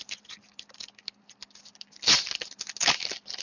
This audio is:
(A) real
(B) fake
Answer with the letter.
A